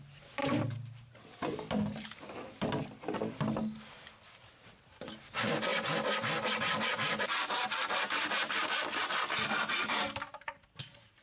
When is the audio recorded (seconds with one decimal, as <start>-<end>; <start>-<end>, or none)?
3.6-4.4; 5.7-6.6